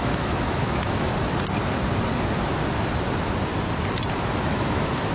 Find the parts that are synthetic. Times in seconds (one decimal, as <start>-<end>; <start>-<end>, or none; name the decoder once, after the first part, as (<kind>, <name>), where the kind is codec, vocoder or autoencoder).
0.0-1.1 (autoencoder, DAC-VAE); 4.2-5.1